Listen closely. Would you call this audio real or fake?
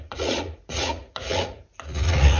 fake